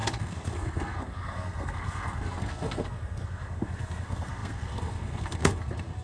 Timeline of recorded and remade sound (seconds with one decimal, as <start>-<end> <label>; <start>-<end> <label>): 0.0-6.0 remade